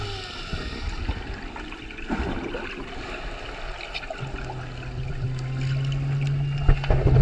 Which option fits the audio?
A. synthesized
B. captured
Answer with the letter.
B